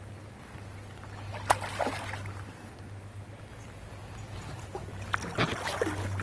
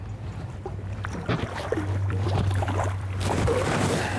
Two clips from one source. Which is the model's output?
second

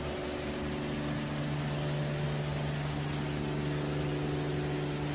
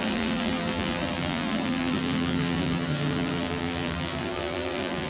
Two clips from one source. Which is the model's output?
second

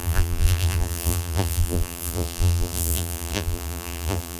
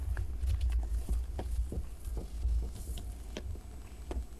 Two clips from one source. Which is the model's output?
first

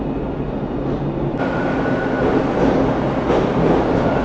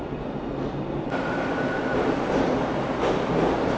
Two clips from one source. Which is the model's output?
second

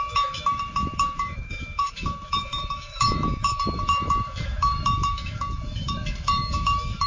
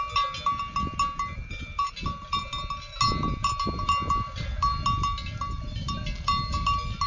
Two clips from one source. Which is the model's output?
first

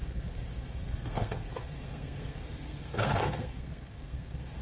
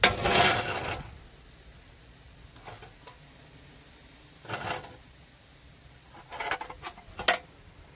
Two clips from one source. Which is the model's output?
first